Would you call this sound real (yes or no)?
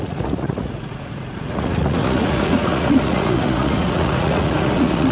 no